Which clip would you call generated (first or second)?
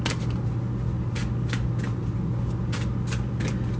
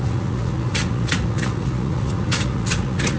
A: second